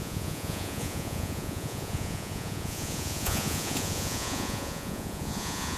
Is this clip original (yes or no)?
no